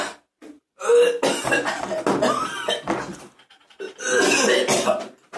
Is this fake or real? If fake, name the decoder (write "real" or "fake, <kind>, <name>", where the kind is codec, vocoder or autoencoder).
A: real